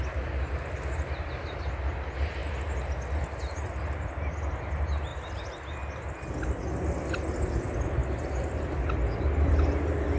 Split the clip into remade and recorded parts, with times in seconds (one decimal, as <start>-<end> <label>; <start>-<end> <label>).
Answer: 0.0-10.2 recorded